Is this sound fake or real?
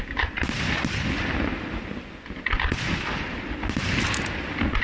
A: real